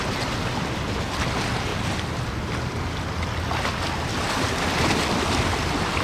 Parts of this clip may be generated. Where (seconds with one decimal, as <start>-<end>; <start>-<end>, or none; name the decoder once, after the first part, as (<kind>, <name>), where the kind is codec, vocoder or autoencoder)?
none